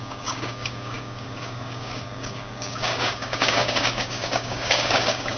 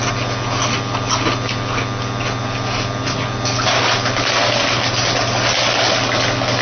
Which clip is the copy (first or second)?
first